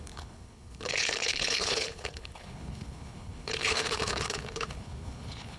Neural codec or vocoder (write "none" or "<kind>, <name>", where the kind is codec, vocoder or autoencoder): codec, HILCodec